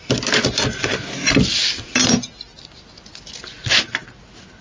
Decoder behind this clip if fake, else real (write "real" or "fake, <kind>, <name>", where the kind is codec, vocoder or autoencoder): real